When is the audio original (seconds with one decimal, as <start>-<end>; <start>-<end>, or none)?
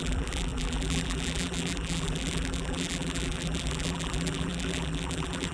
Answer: none